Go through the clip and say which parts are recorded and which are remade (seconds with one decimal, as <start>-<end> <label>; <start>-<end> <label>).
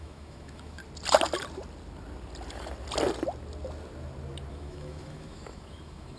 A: 0.0-0.8 remade; 0.8-4.5 recorded; 4.5-6.2 remade